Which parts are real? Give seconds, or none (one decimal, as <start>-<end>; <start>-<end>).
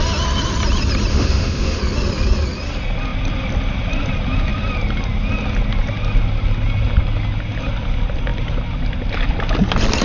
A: 0.0-1.1; 1.8-10.0